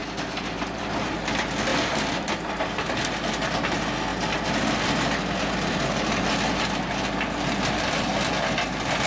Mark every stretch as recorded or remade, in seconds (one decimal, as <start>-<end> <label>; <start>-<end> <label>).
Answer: 0.0-0.8 remade; 0.8-1.7 recorded; 1.7-2.9 remade; 2.9-9.1 recorded